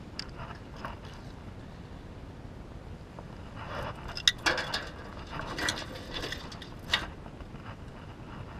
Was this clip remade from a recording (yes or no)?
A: no